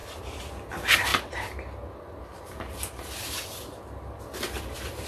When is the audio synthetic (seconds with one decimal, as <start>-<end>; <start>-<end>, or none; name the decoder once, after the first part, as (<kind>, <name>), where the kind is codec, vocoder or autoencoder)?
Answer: none